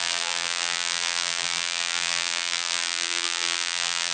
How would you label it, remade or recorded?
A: remade